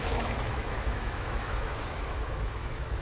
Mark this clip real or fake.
fake